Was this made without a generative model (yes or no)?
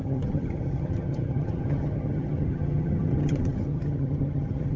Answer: no